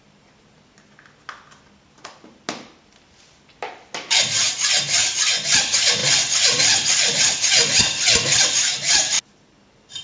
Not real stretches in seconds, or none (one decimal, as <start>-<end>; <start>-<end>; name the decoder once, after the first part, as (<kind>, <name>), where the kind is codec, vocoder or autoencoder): none